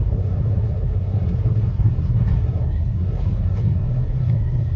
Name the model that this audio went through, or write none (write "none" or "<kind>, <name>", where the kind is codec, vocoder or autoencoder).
codec, SNAC